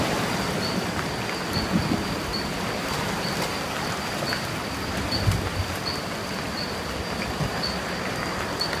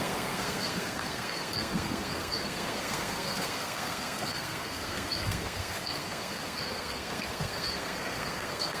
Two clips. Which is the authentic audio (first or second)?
first